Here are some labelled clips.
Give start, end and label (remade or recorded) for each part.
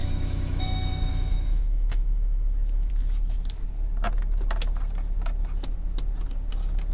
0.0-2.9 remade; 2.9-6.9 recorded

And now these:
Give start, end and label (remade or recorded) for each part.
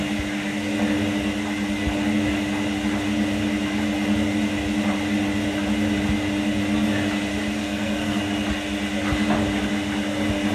0.0-7.6 recorded; 7.6-8.2 remade; 8.2-10.5 recorded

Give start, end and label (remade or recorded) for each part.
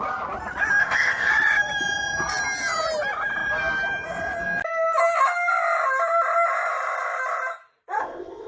0.0-0.8 recorded; 0.8-1.3 remade; 1.3-8.0 recorded; 8.0-8.5 remade